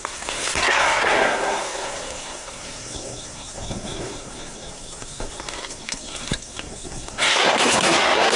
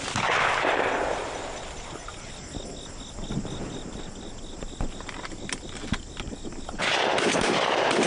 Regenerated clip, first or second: first